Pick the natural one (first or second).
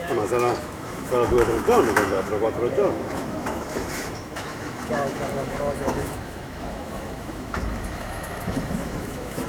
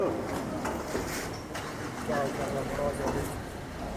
second